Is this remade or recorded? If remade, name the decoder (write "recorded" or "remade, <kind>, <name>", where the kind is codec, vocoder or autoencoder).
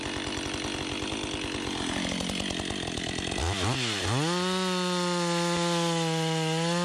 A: recorded